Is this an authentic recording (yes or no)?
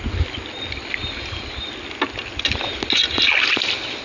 yes